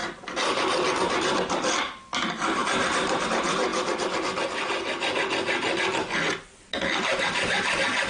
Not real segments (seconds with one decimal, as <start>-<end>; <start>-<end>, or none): 0.0-1.0; 2.6-3.2